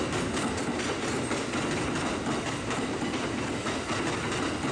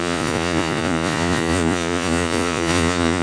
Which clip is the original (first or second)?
first